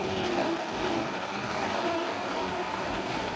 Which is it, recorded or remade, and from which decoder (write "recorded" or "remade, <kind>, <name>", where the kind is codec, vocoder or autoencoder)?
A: remade, codec, DAC